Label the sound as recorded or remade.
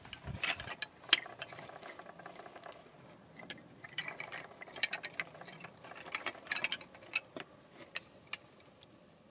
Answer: recorded